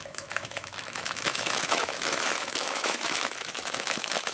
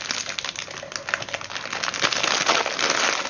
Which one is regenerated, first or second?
first